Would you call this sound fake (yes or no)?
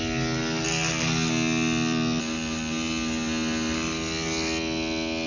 no